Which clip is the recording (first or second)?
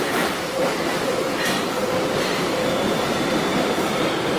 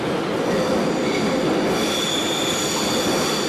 second